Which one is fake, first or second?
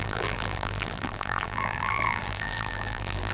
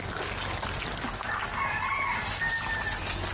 first